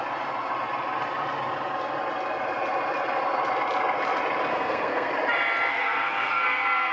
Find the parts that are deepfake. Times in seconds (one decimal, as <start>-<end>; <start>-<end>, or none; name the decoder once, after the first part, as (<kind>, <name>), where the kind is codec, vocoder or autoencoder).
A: 4.5-5.1 (codec, SNAC); 5.7-6.9